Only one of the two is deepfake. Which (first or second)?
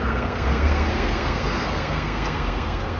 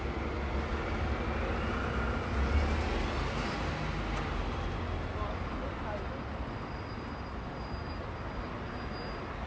first